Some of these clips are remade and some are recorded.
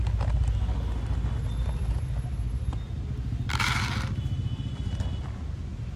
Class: recorded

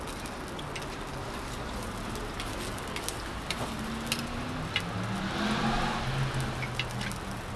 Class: recorded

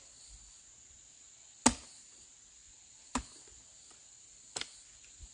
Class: recorded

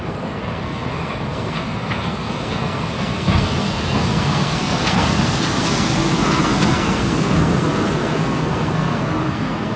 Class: remade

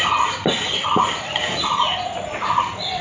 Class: recorded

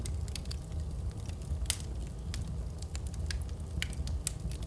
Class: recorded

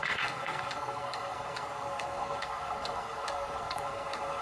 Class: remade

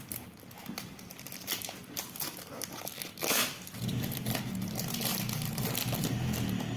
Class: recorded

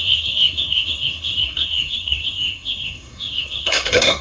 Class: remade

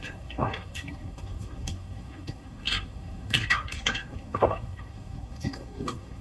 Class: remade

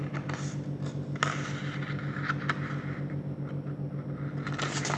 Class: recorded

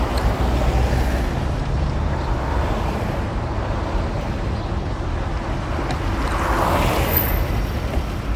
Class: recorded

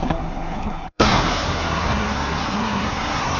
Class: remade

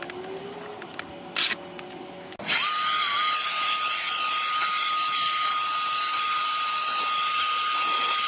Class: recorded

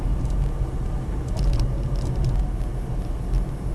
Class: recorded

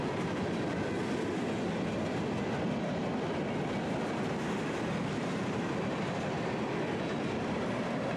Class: recorded